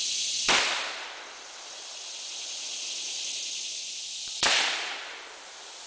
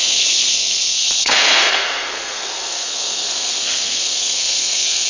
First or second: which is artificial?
second